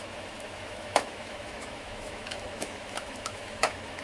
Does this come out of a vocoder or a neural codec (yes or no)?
yes